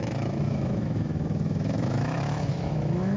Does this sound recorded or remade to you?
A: remade